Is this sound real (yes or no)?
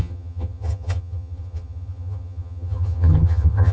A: no